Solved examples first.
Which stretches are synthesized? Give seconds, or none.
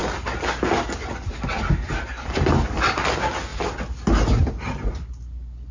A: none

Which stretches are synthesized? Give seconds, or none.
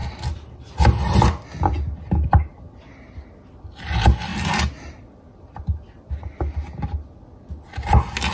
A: none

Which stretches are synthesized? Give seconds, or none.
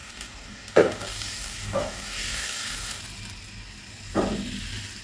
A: 0.0-3.0 (codec, DAC)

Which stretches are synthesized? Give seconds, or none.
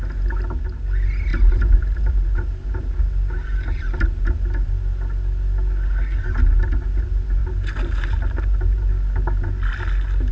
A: 1.3-3.0 (vocoder, BigVGAN v2); 7.4-8.9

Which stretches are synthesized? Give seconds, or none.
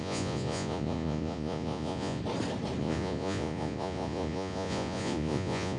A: 0.0-2.2 (vocoder, Vocos); 2.8-5.8